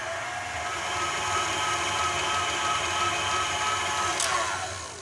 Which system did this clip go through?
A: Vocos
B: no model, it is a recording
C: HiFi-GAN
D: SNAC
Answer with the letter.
B